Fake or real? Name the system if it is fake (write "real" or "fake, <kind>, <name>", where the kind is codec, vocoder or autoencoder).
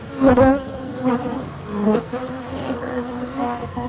fake, codec, SNAC